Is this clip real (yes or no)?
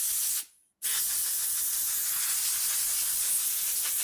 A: yes